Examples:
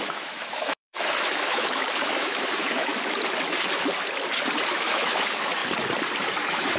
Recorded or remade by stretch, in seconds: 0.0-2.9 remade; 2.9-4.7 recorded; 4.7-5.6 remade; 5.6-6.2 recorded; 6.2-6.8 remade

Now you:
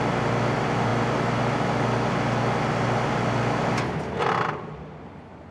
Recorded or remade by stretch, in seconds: 0.0-5.5 recorded

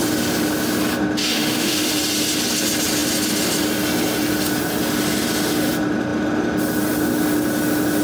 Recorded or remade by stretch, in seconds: 0.0-1.2 recorded; 1.2-1.9 remade; 1.9-8.0 recorded

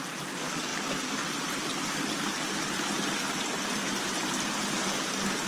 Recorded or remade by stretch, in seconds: 0.0-5.5 recorded

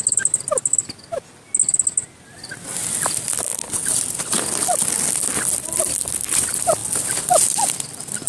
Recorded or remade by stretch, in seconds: 0.0-8.3 recorded

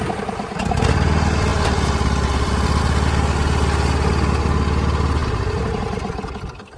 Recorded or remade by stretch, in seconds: 0.0-6.8 recorded

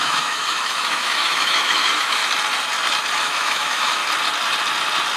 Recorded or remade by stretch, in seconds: 0.0-2.2 remade; 2.2-3.2 recorded; 3.2-4.0 remade; 4.0-5.2 recorded

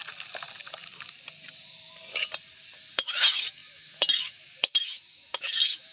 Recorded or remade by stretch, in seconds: 0.0-3.0 recorded; 3.0-5.9 remade